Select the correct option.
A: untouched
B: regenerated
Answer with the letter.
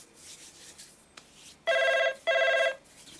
B